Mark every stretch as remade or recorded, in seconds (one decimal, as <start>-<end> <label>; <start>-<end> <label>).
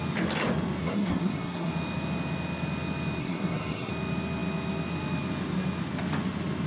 0.0-0.8 recorded; 0.8-1.7 remade; 1.7-3.2 recorded; 3.2-3.9 remade; 3.9-6.7 recorded